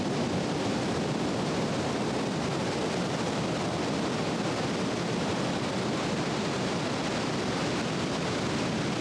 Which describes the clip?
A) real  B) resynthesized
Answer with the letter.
A